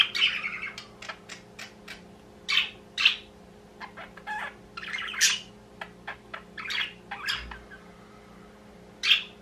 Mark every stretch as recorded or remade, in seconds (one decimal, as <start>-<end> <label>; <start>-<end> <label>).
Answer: 0.0-9.4 recorded